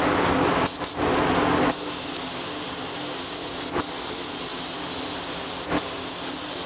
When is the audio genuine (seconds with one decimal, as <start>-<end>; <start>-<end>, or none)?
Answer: 0.0-6.7